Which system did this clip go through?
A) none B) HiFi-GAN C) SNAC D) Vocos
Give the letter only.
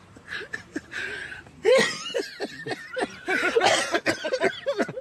A